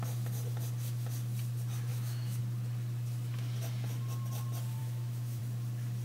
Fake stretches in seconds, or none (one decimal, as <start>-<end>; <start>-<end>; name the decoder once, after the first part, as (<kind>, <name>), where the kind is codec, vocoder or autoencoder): 1.9-2.4 (autoencoder, DAC-VAE); 4.8-5.4